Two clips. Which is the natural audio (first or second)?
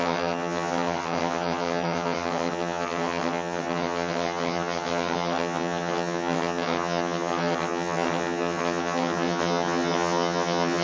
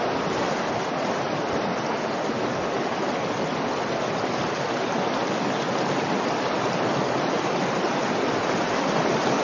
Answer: second